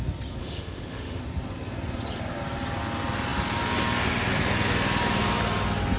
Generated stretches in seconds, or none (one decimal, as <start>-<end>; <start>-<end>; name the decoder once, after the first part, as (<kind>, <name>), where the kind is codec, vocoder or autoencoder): 0.4-1.2 (autoencoder, DAC-VAE)